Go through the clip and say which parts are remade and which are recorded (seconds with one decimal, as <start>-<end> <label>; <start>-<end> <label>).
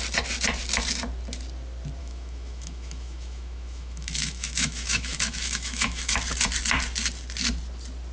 0.0-2.0 recorded; 2.0-6.1 remade; 6.1-8.1 recorded